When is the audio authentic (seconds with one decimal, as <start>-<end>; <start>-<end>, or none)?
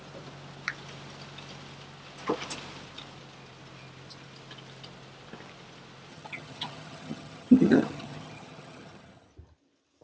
0.0-6.1; 9.3-10.0